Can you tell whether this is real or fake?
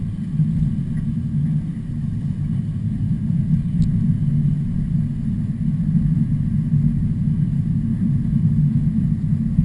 real